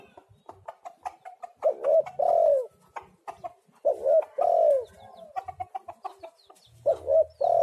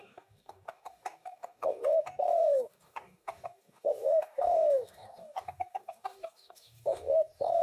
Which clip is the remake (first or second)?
second